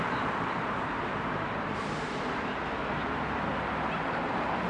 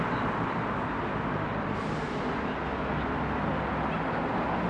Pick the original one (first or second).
second